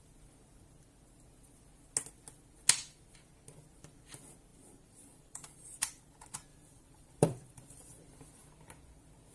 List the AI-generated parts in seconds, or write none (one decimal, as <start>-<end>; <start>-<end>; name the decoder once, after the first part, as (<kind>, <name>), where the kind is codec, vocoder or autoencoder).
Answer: 4.5-6.0 (vocoder, BigVGAN v2); 6.5-8.2